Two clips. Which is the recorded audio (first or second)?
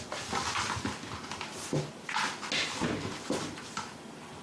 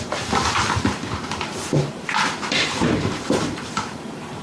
first